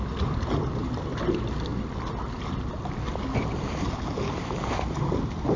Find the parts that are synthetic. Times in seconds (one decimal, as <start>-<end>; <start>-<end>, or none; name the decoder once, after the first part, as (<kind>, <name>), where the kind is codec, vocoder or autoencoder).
none